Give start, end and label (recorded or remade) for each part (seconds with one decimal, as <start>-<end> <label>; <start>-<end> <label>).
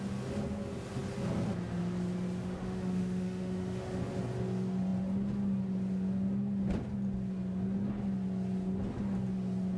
0.0-2.6 recorded; 2.6-4.0 remade; 4.0-9.8 recorded